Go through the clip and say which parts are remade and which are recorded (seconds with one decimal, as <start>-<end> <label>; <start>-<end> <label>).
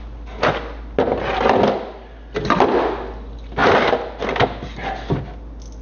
0.0-5.8 recorded